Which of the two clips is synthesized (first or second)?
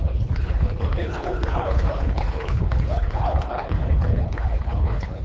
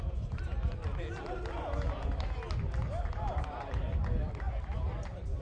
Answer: first